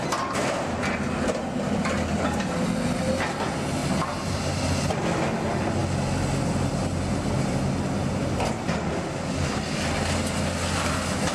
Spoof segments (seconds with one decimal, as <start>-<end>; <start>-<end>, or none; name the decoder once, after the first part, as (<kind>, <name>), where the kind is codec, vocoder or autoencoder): 3.8-4.6 (vocoder, BigVGAN v2)